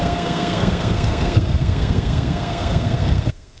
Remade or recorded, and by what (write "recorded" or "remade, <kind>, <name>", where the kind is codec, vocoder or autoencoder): remade, codec, SNAC